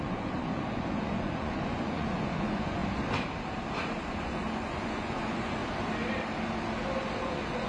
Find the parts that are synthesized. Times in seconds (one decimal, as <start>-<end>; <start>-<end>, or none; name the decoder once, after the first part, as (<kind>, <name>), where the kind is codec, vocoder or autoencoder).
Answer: 0.0-2.8 (vocoder, Vocos); 4.2-5.6; 7.2-7.7